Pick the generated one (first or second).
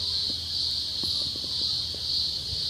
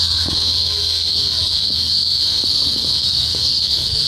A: second